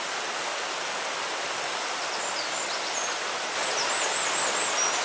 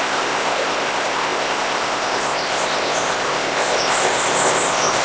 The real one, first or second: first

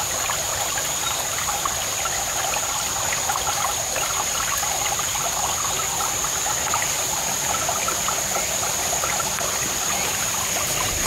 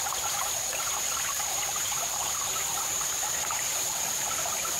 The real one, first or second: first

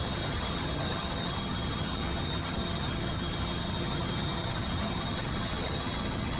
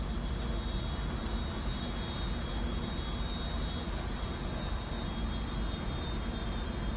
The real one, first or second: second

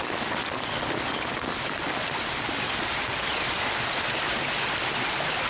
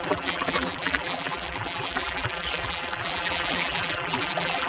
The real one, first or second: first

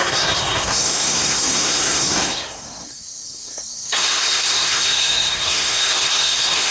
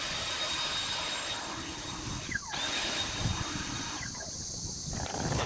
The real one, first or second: second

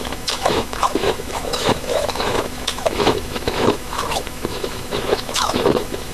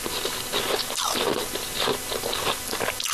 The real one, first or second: second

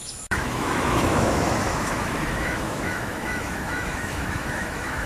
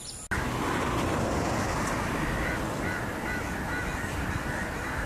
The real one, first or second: second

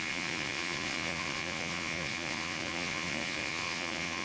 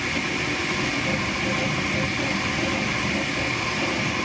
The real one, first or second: second